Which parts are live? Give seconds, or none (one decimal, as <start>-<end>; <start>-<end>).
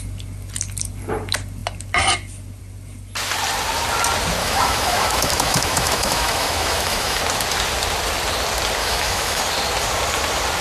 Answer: 0.0-4.4; 7.2-8.8; 9.4-10.6